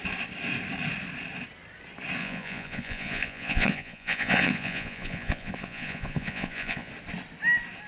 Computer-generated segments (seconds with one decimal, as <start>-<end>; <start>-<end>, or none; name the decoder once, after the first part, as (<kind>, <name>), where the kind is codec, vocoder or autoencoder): 2.2-6.9 (vocoder, Vocos)